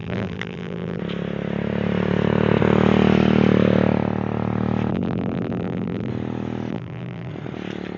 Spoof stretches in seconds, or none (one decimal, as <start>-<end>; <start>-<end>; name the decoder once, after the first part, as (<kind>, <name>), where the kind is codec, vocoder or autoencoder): 0.0-1.0 (vocoder, BigVGAN v2); 4.9-6.1; 6.7-7.3